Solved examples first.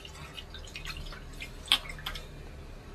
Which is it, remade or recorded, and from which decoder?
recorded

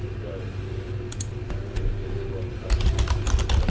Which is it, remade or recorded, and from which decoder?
recorded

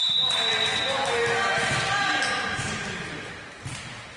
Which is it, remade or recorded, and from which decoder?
recorded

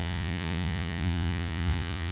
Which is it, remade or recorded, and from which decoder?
remade, vocoder, Vocos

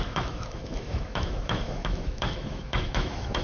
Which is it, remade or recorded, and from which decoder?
remade, autoencoder, DAC-VAE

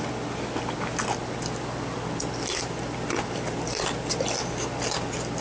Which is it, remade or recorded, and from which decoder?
recorded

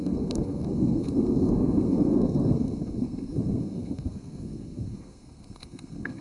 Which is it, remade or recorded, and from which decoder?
remade, codec, SNAC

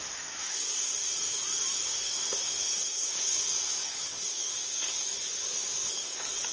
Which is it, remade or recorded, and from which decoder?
remade, codec, DAC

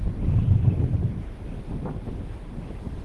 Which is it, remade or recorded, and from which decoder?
recorded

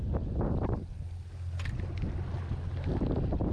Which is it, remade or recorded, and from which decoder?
recorded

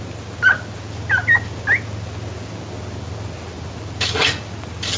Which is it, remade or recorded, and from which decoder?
recorded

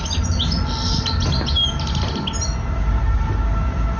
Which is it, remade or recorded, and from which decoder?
recorded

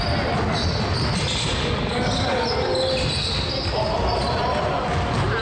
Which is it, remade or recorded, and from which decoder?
recorded